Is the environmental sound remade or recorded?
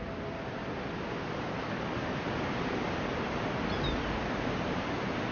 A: recorded